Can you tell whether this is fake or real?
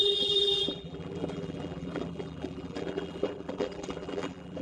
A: fake